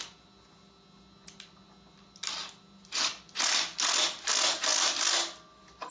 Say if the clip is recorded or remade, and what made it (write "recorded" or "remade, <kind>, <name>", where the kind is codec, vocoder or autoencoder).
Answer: recorded